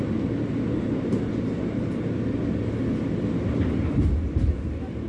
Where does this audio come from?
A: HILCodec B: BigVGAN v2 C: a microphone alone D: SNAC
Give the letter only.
C